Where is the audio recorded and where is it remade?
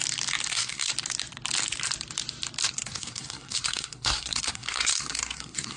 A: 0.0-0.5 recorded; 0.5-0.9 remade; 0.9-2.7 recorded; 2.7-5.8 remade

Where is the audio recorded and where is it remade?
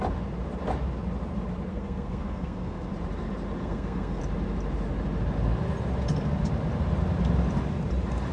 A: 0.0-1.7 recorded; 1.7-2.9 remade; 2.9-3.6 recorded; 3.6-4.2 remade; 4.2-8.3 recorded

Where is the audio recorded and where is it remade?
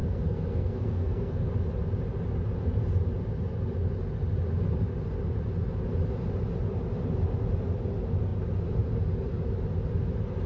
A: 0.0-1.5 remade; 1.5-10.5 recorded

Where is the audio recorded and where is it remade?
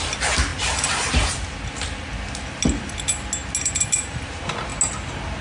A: 0.0-5.4 recorded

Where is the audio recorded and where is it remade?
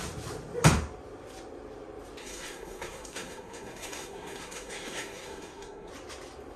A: 0.0-2.2 recorded; 2.2-5.9 remade; 5.9-6.6 recorded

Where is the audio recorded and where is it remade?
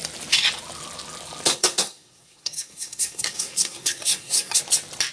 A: 0.0-1.5 recorded; 1.5-4.6 remade; 4.6-5.1 recorded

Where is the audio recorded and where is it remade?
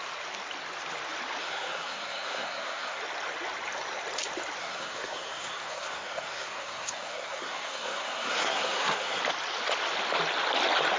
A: 0.0-1.4 recorded; 1.4-3.0 remade; 3.0-4.6 recorded; 4.6-9.2 remade; 9.2-11.0 recorded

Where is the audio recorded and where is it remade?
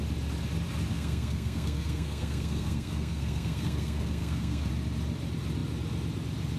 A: 0.0-0.9 recorded; 0.9-4.7 remade; 4.7-6.6 recorded